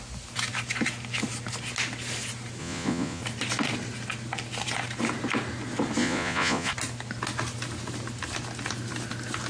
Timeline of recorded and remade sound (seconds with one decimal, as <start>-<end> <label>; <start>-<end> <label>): 0.0-2.6 recorded; 2.6-3.2 remade; 3.2-6.0 recorded; 6.0-6.7 remade; 6.7-9.5 recorded